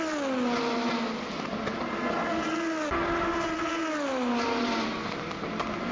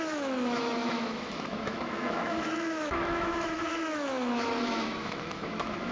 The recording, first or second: first